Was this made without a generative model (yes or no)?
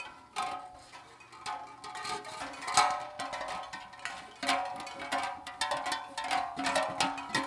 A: yes